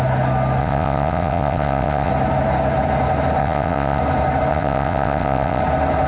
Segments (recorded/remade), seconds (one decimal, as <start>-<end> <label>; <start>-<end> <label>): 0.0-0.6 recorded; 0.6-2.1 remade; 2.1-3.4 recorded; 3.4-4.0 remade; 4.0-4.5 recorded; 4.5-5.6 remade; 5.6-6.1 recorded